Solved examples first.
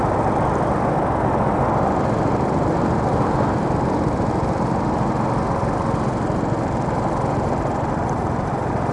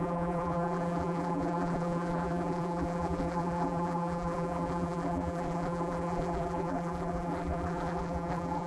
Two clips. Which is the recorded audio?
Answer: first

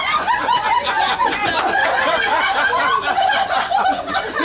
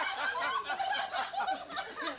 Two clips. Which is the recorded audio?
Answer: second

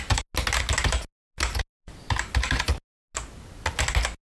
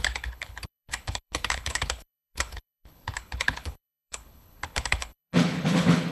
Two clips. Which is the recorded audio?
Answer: first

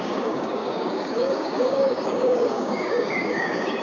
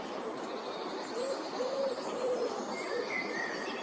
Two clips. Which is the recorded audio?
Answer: second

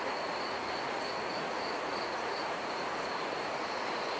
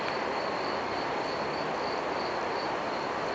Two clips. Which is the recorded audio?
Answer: second